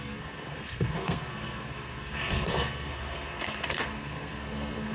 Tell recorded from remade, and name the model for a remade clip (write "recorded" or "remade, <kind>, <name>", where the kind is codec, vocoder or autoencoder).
remade, codec, SNAC